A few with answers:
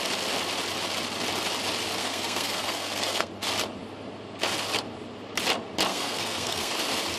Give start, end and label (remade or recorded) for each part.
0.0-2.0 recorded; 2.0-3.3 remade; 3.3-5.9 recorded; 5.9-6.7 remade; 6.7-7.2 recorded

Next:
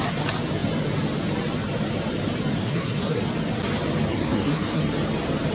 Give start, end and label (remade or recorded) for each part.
0.0-2.6 recorded; 2.6-3.2 remade; 3.2-4.1 recorded; 4.1-4.8 remade; 4.8-5.5 recorded

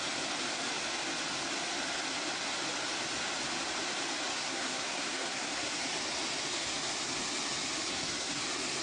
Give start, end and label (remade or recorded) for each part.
0.0-4.3 recorded; 4.3-5.8 remade; 5.8-7.9 recorded; 7.9-8.4 remade; 8.4-8.8 recorded

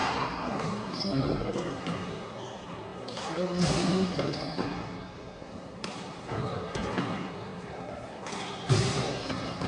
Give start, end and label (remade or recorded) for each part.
0.0-9.7 remade

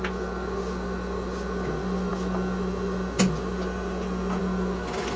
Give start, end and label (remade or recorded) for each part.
0.0-5.2 recorded